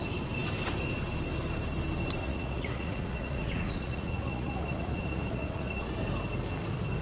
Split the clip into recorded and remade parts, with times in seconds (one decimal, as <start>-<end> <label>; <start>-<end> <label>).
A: 0.0-2.2 recorded; 2.2-5.9 remade; 5.9-7.0 recorded